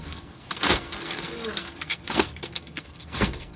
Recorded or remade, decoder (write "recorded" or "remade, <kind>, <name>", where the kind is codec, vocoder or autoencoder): remade, codec, SNAC